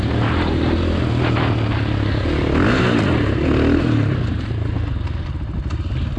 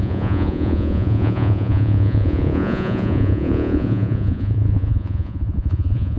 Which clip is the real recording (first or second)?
first